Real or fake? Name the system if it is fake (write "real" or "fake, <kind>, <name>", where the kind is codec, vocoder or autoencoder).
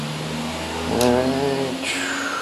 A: real